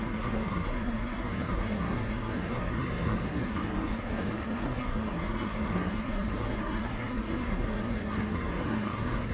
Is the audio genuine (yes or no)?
no